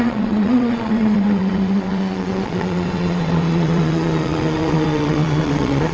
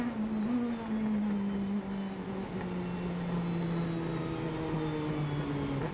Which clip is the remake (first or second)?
first